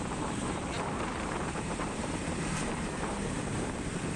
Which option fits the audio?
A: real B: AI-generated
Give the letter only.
B